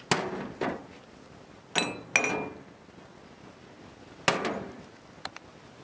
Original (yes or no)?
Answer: yes